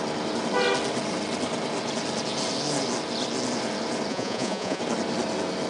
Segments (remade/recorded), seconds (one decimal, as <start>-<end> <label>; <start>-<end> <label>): 0.0-4.1 recorded; 4.1-4.8 remade; 4.8-5.7 recorded